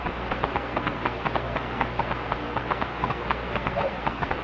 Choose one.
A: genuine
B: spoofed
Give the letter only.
B